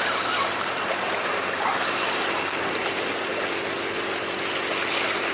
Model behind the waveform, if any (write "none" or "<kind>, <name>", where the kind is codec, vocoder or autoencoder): none